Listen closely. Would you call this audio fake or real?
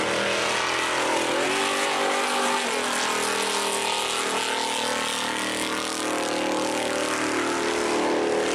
real